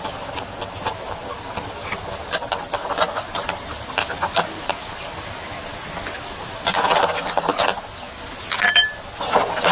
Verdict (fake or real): real